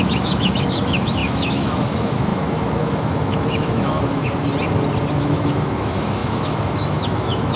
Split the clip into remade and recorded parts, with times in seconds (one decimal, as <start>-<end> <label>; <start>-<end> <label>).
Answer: 0.0-4.4 remade; 4.4-5.1 recorded; 5.1-7.6 remade